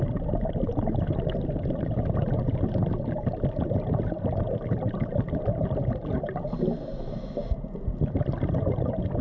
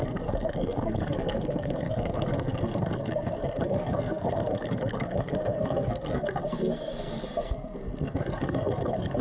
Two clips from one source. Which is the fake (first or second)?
second